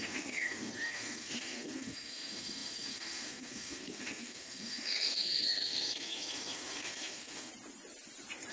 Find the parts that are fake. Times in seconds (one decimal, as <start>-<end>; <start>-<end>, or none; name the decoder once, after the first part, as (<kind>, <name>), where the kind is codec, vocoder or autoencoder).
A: 0.0-7.5 (codec, SNAC)